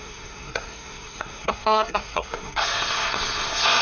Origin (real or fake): fake